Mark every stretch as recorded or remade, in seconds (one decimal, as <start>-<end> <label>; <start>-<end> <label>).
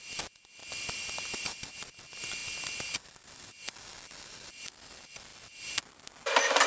0.0-6.7 recorded